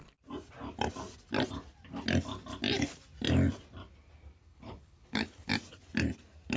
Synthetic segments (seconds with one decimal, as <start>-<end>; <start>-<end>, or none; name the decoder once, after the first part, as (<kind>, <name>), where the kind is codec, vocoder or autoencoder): 4.4-5.5 (codec, HILCodec)